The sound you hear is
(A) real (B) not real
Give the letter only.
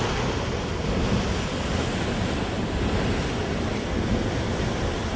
A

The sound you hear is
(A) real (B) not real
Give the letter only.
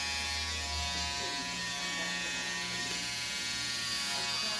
A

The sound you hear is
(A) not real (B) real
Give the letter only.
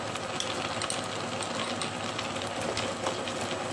B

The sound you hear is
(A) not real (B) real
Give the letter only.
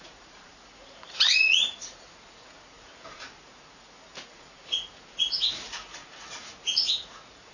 A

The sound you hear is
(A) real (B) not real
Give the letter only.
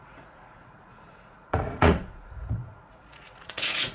B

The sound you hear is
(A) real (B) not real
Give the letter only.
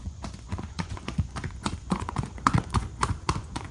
B